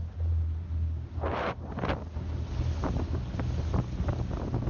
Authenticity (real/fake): real